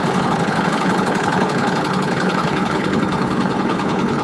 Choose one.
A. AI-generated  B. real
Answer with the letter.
A